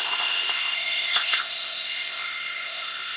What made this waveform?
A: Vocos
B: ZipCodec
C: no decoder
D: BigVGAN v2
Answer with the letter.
B